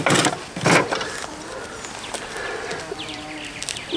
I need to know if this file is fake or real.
real